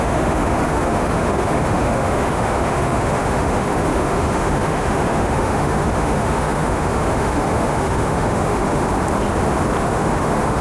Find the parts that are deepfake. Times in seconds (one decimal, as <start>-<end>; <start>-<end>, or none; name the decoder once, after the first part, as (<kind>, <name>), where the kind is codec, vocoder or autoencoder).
0.0-8.8 (autoencoder, DAC-VAE); 9.8-10.6